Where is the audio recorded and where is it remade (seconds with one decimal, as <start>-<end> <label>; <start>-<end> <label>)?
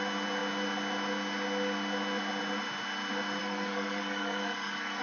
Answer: 0.0-3.4 recorded; 3.4-5.0 remade